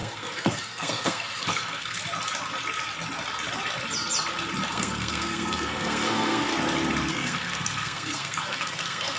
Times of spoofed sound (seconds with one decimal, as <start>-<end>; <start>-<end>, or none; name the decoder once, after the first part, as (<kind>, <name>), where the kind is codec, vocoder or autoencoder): 0.0-2.0 (codec, SNAC); 4.7-6.5; 7.1-9.2